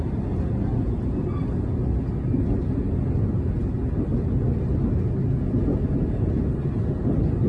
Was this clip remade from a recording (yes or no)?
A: no